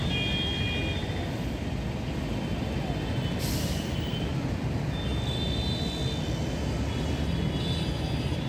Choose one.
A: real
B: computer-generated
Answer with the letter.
A